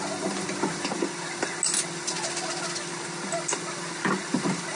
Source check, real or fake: real